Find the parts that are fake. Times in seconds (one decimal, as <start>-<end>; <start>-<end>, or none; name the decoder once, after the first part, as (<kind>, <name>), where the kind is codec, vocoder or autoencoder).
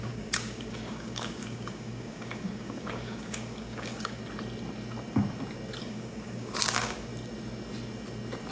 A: 0.0-4.2 (codec, DAC); 5.8-7.1